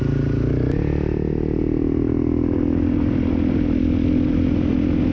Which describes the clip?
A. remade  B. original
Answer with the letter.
B